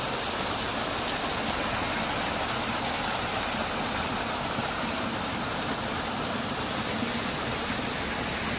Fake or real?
real